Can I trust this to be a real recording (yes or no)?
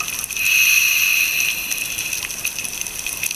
yes